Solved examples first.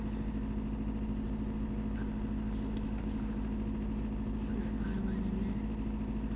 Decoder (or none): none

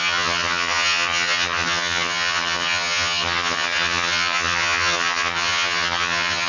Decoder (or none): vocoder, HiFi-GAN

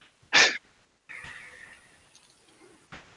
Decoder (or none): none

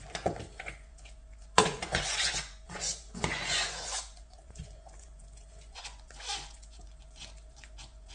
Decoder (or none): vocoder, Vocos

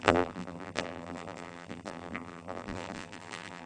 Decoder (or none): vocoder, BigVGAN v2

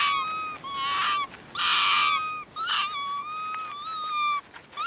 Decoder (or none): none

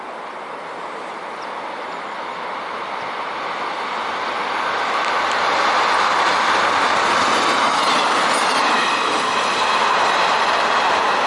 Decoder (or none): none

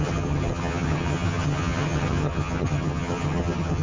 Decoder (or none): vocoder, HiFi-GAN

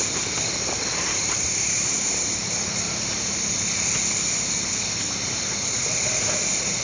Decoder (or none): none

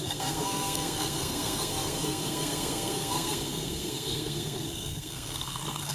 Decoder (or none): codec, SNAC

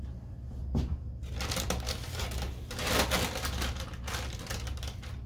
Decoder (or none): none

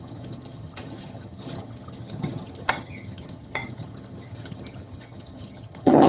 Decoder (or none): vocoder, HiFi-GAN